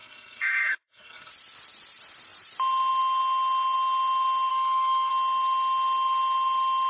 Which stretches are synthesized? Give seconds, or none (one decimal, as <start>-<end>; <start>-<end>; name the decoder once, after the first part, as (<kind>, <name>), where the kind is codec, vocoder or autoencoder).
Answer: 0.0-1.3 (codec, SNAC); 4.5-5.1

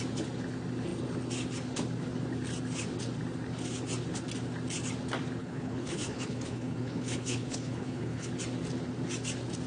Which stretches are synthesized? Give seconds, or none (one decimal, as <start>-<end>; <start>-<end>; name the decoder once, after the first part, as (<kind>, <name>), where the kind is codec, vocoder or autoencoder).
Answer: 5.4-8.3 (codec, HILCodec)